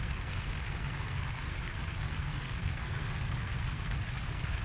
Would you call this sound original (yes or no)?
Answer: no